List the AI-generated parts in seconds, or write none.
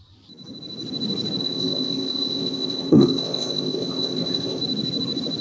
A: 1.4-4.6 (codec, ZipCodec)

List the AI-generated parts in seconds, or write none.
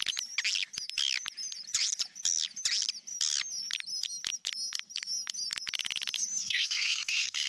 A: 6.4-7.5 (codec, SNAC)